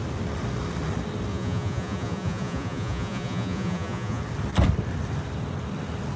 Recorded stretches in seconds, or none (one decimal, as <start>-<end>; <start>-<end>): 0.0-1.3; 4.2-6.2